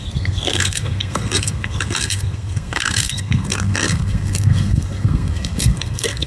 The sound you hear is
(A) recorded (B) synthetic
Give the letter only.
B